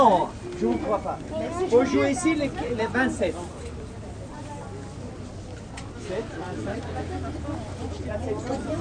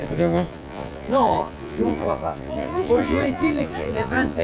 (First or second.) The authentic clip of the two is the first